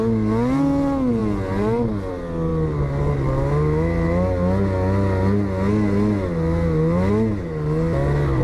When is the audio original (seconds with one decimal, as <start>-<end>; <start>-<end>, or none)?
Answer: 0.0-8.4